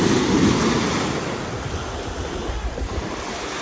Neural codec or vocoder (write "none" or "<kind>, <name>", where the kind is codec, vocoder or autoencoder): none